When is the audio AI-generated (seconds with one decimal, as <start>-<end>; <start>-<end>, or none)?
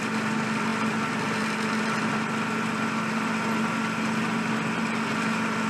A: none